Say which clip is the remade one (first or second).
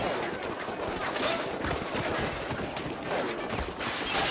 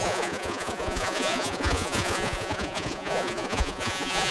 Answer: second